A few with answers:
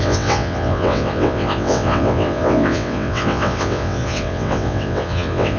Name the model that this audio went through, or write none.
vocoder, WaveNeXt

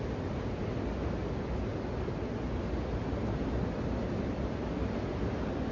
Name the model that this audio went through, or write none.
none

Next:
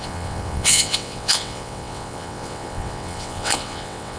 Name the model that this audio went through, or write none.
vocoder, WaveNeXt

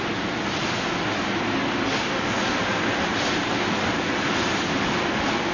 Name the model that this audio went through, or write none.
none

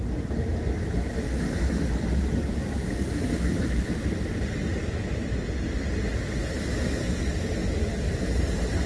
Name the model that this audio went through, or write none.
none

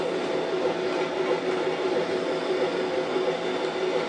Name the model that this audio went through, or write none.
none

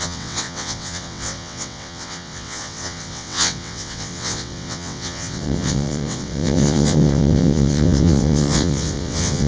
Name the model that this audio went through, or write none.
vocoder, WaveNeXt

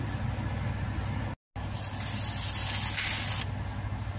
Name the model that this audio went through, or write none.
none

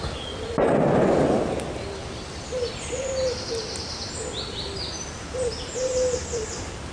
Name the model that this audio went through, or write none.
none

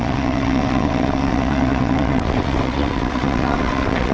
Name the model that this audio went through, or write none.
vocoder, WaveNeXt